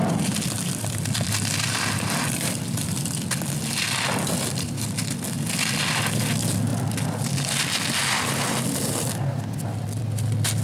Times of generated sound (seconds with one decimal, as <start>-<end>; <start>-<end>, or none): none